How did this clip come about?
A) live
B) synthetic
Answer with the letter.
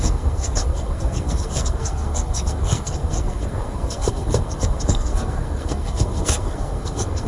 B